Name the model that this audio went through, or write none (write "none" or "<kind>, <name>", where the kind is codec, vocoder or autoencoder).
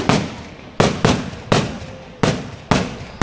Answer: none